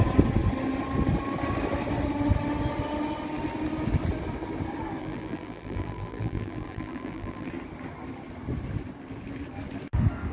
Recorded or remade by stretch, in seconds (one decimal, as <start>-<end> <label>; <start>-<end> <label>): 0.0-5.0 recorded; 5.0-7.5 remade; 7.5-10.3 recorded